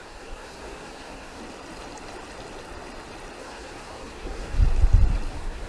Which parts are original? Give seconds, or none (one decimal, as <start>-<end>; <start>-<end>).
1.4-3.4; 4.6-5.3